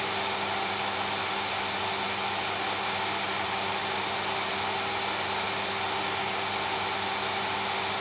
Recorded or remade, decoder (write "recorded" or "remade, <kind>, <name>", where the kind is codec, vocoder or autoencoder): recorded